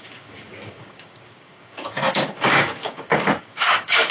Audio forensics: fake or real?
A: fake